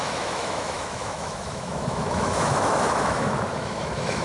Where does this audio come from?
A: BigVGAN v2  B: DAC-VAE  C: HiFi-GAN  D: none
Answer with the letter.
B